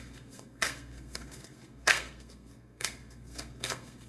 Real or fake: fake